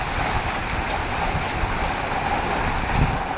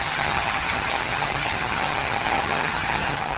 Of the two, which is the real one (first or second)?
first